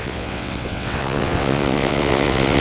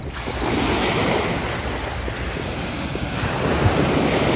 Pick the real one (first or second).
second